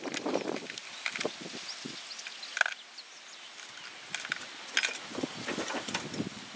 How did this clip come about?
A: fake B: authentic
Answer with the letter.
B